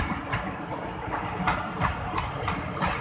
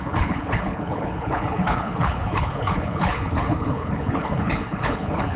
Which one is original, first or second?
first